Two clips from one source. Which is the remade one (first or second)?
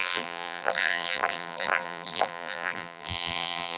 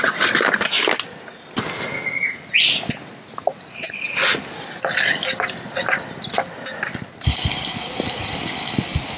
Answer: first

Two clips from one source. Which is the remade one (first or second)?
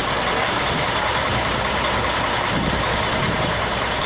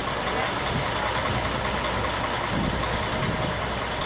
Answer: first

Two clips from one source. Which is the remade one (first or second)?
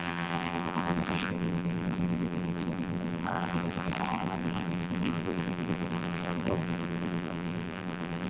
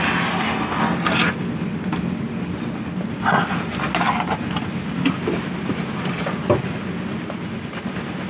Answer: first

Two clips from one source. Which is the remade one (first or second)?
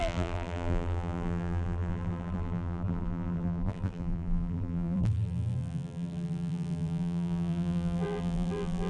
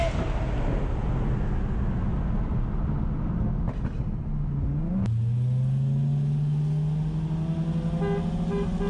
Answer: first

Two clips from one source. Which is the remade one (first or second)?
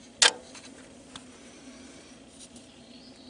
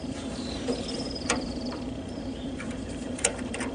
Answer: second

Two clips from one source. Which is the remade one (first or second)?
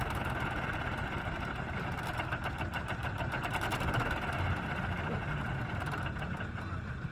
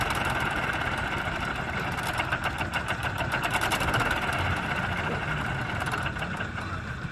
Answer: second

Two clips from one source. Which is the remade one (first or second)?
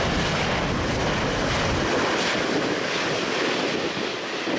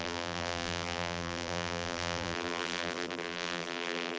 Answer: second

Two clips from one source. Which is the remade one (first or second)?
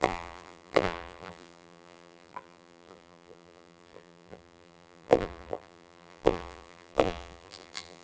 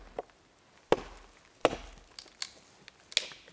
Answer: first